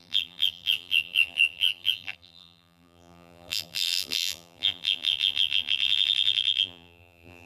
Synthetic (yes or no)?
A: yes